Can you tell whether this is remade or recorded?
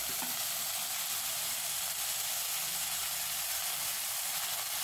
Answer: recorded